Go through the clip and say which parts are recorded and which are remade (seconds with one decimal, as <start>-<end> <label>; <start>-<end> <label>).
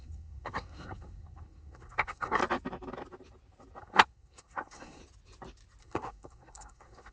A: 0.0-2.4 remade; 2.4-3.8 recorded; 3.8-5.0 remade; 5.0-5.8 recorded; 5.8-7.1 remade